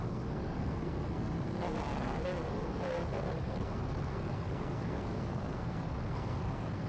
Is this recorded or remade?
remade